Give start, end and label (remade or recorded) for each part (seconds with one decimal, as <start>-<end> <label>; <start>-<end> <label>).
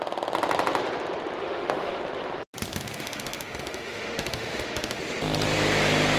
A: 0.0-1.4 recorded; 1.4-2.0 remade; 2.0-2.7 recorded; 2.7-5.0 remade; 5.0-6.2 recorded